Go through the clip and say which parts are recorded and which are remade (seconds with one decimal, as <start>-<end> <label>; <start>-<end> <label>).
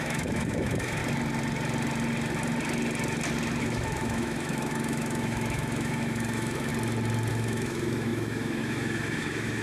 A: 0.0-1.0 remade; 1.0-3.6 recorded; 3.6-6.7 remade; 6.7-7.3 recorded; 7.3-9.6 remade